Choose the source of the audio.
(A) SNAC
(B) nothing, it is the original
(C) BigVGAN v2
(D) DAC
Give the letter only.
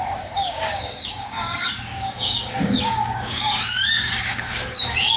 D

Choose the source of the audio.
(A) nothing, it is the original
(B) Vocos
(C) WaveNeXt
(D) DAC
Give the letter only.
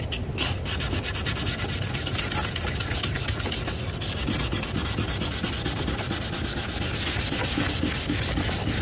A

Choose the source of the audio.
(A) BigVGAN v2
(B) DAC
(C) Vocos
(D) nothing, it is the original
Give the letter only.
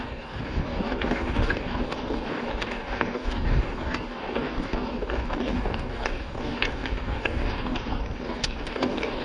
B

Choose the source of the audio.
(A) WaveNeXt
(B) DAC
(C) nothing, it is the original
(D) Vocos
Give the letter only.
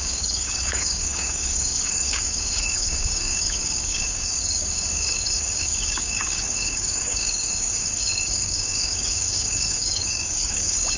B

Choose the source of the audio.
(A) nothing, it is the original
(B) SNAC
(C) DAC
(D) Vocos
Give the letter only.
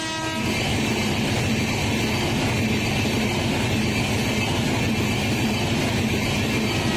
A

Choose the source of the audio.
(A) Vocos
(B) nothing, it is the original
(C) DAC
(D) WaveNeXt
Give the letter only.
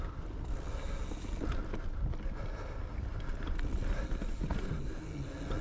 B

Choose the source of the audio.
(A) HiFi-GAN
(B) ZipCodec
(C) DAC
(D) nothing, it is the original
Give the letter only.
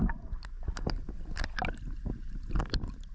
D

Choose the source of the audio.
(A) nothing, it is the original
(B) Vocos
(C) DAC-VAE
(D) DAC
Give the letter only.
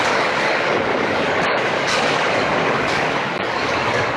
D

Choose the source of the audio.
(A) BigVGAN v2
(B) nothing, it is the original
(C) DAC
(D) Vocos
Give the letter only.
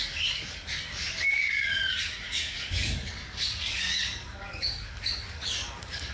C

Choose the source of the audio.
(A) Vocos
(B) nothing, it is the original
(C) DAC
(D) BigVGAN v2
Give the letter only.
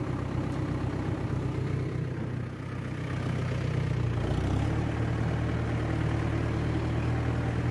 B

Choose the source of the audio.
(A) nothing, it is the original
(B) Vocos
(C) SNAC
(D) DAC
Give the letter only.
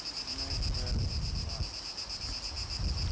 A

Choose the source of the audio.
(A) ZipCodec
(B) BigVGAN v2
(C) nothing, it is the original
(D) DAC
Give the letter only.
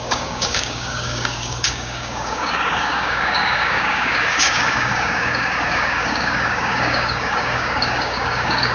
D